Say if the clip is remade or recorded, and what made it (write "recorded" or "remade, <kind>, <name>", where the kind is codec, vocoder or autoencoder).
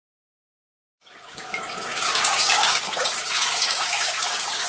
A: remade, codec, DAC